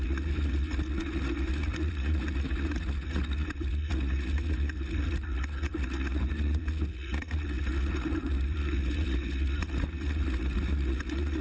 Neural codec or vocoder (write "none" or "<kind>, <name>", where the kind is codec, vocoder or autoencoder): vocoder, Vocos